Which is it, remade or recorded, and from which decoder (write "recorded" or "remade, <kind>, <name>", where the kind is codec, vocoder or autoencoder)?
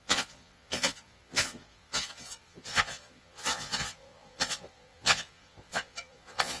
remade, vocoder, Vocos